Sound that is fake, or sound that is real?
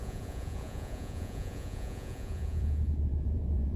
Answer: fake